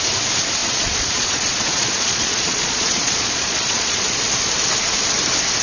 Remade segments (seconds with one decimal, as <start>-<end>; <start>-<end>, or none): 0.6-4.0

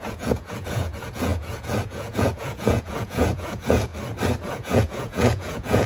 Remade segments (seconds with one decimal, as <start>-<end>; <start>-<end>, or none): 0.0-3.9; 4.5-5.9

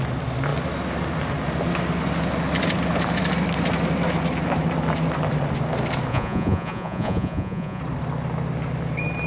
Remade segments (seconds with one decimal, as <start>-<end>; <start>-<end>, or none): 6.1-7.8

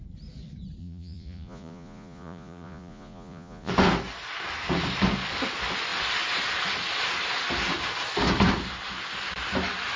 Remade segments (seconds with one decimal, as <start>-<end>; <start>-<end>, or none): 0.8-3.7

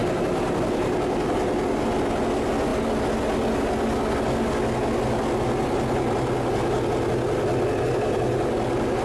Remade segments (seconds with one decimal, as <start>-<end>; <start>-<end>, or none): none

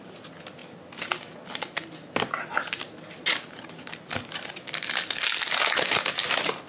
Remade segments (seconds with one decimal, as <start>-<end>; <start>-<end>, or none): none